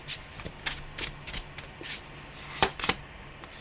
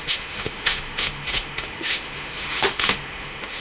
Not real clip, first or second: second